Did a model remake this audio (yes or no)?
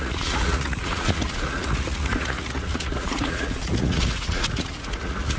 yes